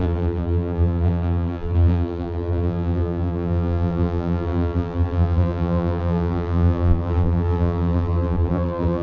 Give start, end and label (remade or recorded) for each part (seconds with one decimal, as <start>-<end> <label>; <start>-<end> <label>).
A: 0.0-9.0 remade